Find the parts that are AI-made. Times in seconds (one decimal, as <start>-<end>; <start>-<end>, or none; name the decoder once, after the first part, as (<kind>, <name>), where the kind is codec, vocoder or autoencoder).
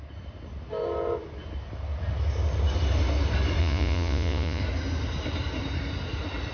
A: 3.6-4.6 (vocoder, Vocos)